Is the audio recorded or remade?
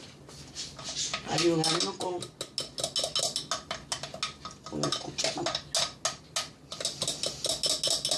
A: recorded